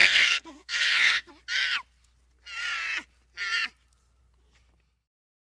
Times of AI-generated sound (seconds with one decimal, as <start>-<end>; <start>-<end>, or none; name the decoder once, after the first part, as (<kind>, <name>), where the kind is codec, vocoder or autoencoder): 0.0-1.3 (codec, SNAC)